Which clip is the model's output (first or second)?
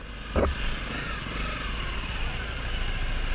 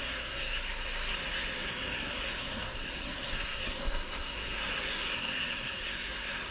second